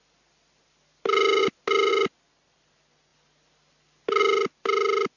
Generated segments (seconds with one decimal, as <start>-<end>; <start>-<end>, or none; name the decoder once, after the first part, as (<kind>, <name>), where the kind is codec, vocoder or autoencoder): none